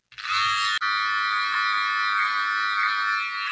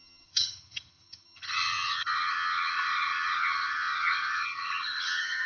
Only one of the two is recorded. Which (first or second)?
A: first